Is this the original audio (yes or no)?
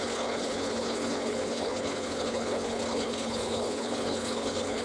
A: no